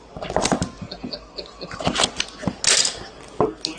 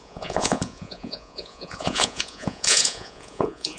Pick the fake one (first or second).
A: second